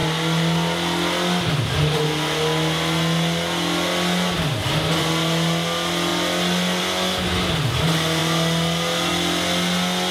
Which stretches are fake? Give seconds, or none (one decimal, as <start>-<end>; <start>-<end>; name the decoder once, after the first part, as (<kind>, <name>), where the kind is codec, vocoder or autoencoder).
none